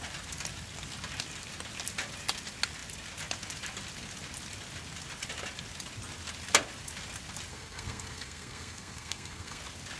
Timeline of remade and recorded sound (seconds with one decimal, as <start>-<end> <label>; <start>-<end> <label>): 0.0-7.5 recorded; 7.5-9.6 remade; 9.6-10.0 recorded